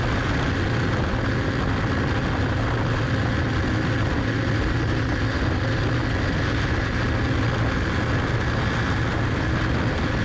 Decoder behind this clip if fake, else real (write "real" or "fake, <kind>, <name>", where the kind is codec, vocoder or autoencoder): real